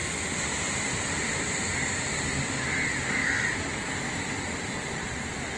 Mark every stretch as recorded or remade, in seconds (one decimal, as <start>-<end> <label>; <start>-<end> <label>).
0.0-5.6 recorded